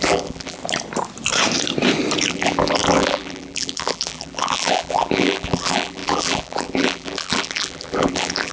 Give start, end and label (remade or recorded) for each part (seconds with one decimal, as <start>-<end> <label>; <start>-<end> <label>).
0.0-0.6 remade; 0.6-2.3 recorded; 2.3-8.5 remade